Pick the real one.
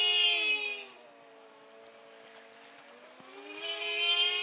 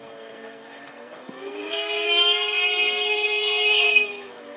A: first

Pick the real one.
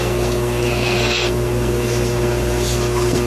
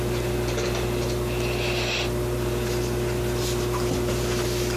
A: second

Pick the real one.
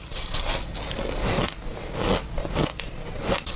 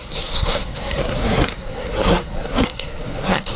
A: first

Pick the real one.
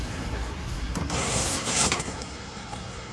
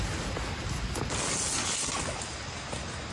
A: second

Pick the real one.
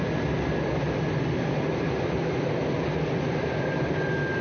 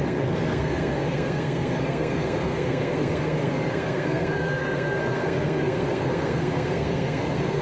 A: first